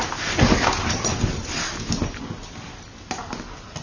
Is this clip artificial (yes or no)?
no